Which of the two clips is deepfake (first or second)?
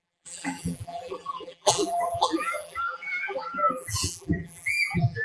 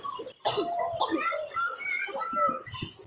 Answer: first